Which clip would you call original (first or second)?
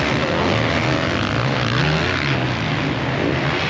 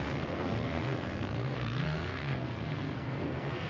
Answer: first